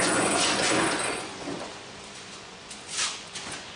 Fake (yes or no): yes